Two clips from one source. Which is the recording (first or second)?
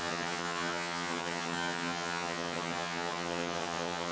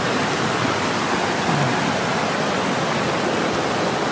second